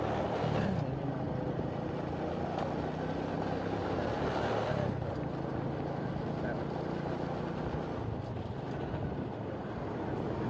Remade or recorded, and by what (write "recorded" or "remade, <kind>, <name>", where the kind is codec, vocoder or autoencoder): recorded